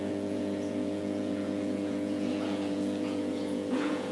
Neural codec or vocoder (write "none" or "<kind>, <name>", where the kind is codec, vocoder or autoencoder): vocoder, Vocos